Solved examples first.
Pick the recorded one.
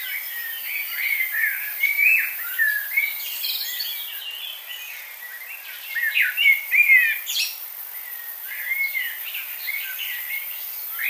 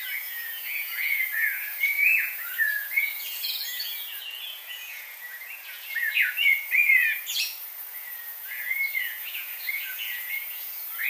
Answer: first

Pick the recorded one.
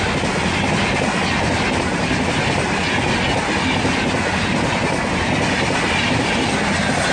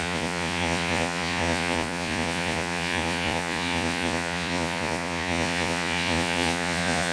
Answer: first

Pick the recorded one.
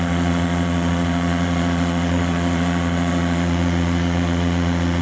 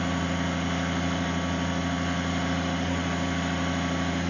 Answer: second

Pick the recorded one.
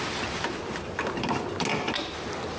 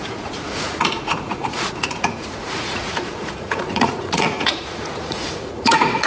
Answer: first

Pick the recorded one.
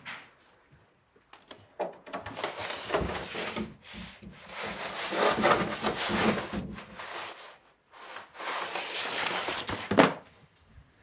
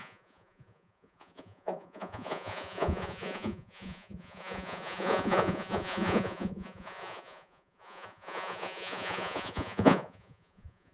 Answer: first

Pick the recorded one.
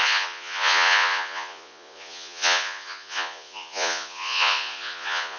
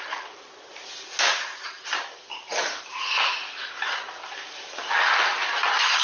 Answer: second